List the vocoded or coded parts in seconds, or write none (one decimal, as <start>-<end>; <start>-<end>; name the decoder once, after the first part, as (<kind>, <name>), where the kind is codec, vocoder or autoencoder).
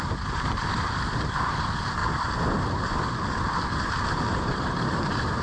0.0-2.0 (vocoder, BigVGAN v2); 3.8-5.4